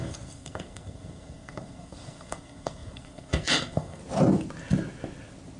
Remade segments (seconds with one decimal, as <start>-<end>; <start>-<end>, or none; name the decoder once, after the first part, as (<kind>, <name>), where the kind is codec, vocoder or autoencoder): 0.0-4.0 (codec, SNAC)